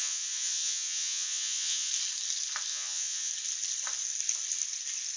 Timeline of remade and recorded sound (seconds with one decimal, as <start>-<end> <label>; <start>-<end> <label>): 0.0-1.9 remade; 1.9-2.7 recorded; 2.7-3.3 remade; 3.3-5.2 recorded